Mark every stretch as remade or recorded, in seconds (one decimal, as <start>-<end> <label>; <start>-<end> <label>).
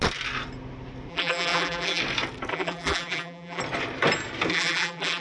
0.0-1.1 recorded; 1.1-2.0 remade; 2.0-2.5 recorded; 2.5-3.6 remade; 3.6-4.5 recorded; 4.5-5.2 remade